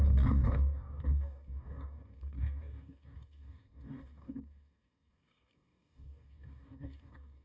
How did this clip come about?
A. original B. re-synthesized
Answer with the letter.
B